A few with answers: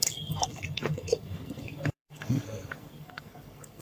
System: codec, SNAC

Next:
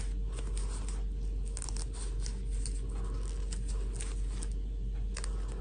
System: none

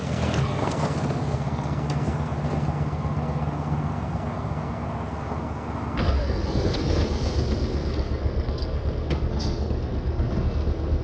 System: codec, SNAC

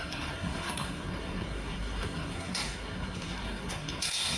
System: codec, SNAC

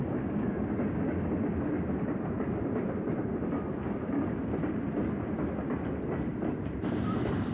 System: none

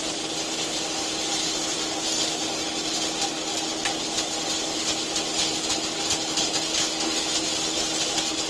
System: none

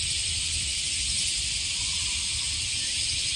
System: none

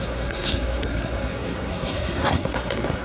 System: codec, SNAC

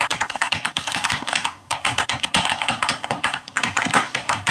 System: codec, SNAC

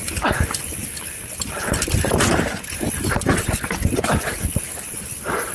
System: none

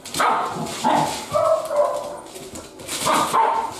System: none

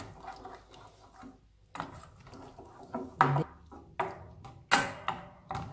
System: none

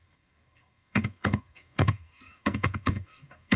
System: codec, SNAC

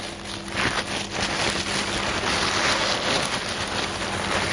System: none